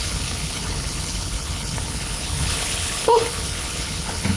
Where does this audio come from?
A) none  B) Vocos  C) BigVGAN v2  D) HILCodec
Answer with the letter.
D